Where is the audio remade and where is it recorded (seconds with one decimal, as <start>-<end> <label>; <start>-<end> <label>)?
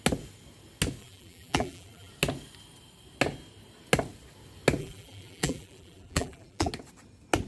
0.0-1.0 recorded; 1.0-2.1 remade; 2.1-4.8 recorded; 4.8-6.7 remade; 6.7-7.5 recorded